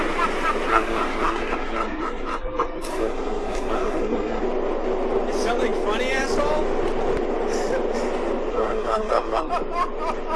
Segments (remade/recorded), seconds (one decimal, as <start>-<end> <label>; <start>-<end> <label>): 0.0-0.7 recorded; 0.7-4.4 remade; 4.4-8.5 recorded; 8.5-9.5 remade; 9.5-10.4 recorded